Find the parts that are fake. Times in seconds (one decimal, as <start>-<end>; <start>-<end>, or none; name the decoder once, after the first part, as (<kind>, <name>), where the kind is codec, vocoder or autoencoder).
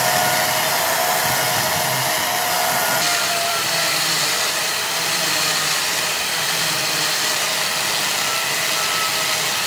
3.1-6.8 (vocoder, BigVGAN v2)